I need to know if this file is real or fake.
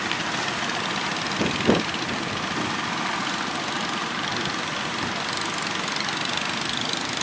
real